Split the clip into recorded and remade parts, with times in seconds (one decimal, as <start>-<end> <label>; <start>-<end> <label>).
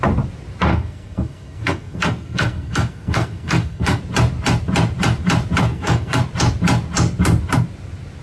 0.0-0.7 recorded; 0.7-4.0 remade; 4.0-5.6 recorded; 5.6-6.2 remade; 6.2-8.2 recorded